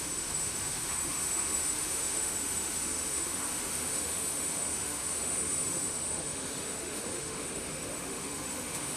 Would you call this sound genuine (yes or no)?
no